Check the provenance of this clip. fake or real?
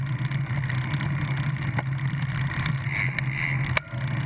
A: real